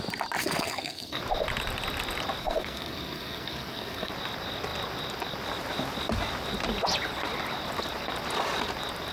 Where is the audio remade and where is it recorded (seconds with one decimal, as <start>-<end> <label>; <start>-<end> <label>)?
0.0-0.4 recorded; 0.4-1.2 remade; 1.2-2.4 recorded; 2.4-4.1 remade; 4.1-9.1 recorded